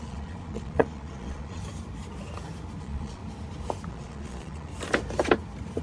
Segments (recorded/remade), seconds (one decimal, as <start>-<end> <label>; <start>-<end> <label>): 0.0-1.6 remade; 1.6-2.8 recorded; 2.8-3.2 remade; 3.2-3.9 recorded; 3.9-4.7 remade; 4.7-5.8 recorded